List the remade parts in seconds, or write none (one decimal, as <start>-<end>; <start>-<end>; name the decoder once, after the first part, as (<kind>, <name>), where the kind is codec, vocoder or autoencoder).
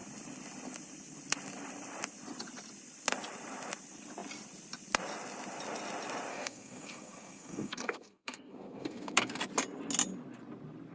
6.3-9.4 (codec, SNAC)